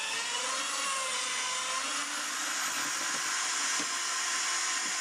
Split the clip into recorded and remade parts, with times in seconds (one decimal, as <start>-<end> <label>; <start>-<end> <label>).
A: 0.0-5.0 recorded